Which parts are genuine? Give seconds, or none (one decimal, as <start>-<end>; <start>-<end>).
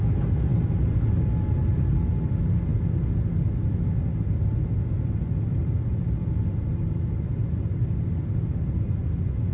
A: 0.0-9.5